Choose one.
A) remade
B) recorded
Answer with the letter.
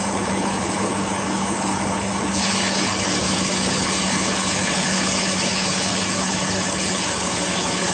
A